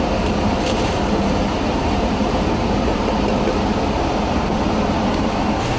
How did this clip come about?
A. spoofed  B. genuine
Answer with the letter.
A